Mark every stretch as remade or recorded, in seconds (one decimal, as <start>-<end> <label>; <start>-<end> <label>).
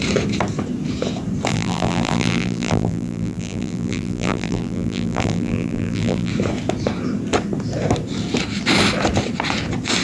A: 0.0-1.5 recorded; 1.5-6.3 remade; 6.3-10.0 recorded